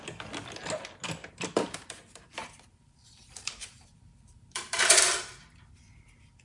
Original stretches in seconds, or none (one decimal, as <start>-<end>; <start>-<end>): 0.0-1.2; 5.0-6.4